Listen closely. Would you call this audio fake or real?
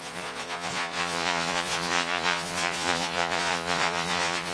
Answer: fake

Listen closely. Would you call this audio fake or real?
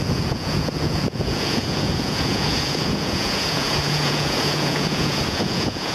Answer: fake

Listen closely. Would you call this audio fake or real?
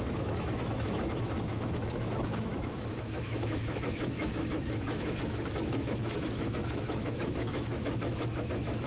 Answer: fake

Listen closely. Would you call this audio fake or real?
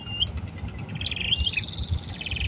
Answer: real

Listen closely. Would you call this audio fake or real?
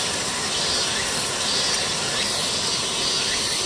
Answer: real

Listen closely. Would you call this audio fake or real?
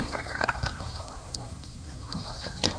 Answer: fake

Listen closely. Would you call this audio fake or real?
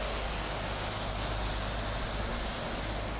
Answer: real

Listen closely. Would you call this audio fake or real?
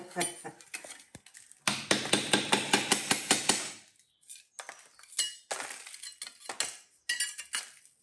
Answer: real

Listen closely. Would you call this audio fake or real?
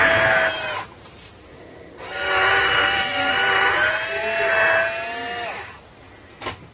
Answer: real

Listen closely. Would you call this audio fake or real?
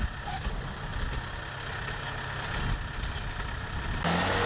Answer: real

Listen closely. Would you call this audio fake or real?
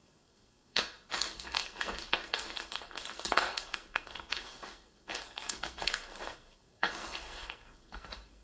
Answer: fake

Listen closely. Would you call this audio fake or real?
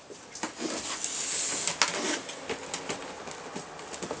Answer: real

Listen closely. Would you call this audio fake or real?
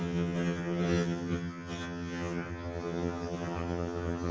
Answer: fake